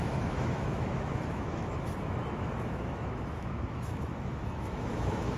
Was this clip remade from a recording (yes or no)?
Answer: yes